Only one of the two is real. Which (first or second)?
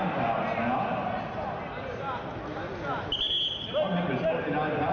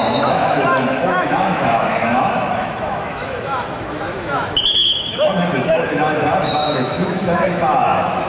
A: first